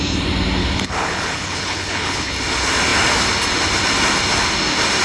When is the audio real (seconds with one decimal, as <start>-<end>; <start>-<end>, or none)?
0.0-0.6; 2.3-5.0